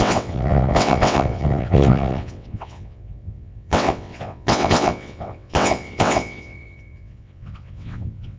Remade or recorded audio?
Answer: remade